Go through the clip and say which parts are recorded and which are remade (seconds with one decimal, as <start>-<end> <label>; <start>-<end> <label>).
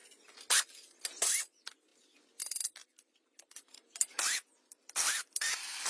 0.0-2.8 recorded; 2.8-5.9 remade